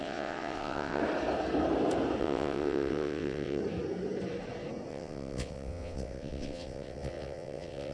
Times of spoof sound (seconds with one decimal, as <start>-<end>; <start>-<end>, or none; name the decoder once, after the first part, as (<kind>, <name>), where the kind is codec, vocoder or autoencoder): 0.0-1.0 (vocoder, WaveNeXt); 2.2-3.6; 4.9-7.9